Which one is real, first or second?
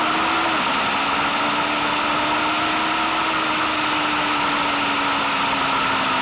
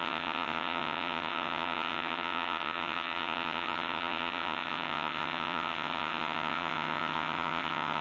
first